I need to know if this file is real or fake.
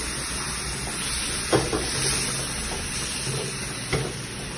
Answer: real